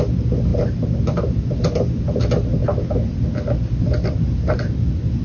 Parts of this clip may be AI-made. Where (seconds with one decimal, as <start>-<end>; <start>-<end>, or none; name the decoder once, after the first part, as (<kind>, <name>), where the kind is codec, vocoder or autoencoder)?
none

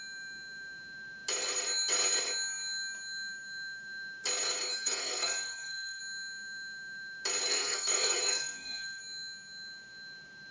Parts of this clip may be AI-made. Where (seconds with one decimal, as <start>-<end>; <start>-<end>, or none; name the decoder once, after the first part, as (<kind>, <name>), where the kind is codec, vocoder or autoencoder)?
4.7-6.0 (codec, SNAC); 7.5-9.0

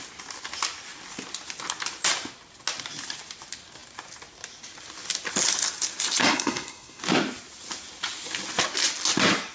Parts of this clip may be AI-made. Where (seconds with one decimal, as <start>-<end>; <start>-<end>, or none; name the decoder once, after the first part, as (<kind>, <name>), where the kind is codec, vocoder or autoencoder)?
6.2-7.0 (codec, SNAC)